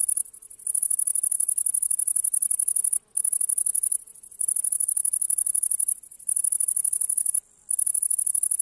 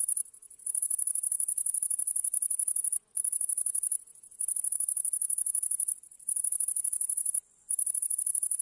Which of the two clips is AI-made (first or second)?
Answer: second